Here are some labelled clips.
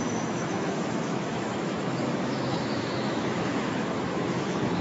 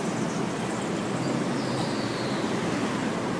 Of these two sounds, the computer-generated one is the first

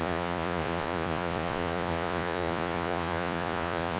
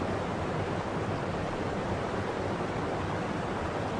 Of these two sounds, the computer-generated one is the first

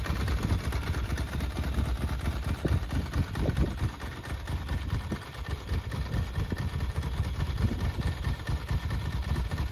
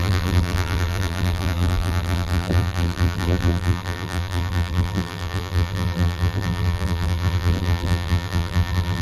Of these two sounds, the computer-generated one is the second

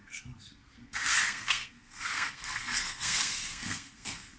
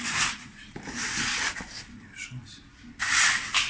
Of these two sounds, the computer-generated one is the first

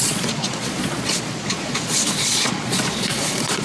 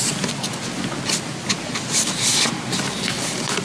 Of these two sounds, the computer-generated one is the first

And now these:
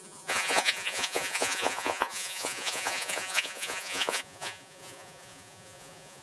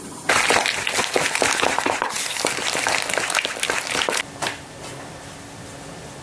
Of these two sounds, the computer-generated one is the first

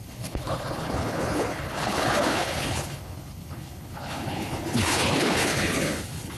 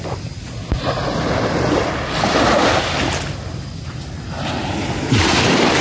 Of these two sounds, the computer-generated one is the first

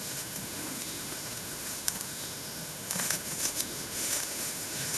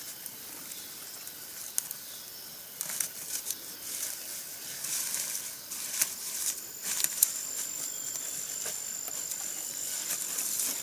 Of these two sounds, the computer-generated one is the first